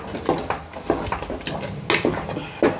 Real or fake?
real